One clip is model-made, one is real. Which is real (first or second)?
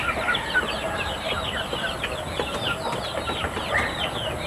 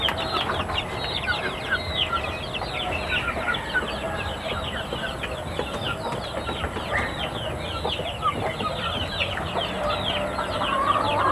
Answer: second